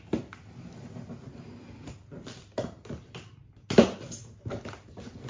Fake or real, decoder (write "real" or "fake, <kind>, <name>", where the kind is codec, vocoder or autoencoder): real